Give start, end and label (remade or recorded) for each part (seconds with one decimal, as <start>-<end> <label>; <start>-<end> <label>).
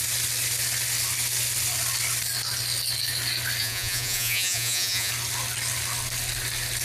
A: 0.0-3.6 recorded; 3.6-5.1 remade; 5.1-6.8 recorded